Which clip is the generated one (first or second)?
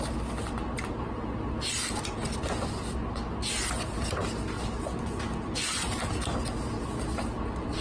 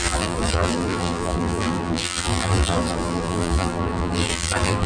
second